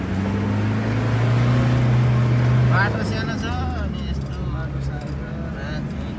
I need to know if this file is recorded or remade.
recorded